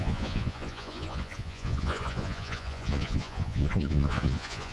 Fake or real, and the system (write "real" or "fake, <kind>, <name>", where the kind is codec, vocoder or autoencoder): fake, vocoder, Vocos